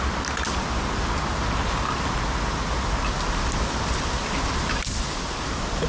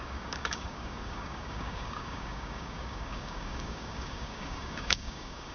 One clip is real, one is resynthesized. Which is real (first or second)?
first